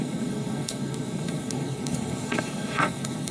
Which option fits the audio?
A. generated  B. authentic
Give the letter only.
A